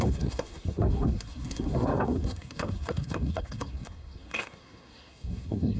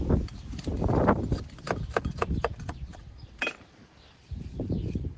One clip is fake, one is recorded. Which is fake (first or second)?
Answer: first